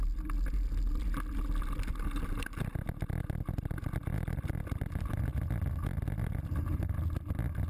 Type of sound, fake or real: real